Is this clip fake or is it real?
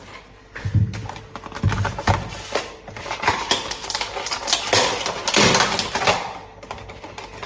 real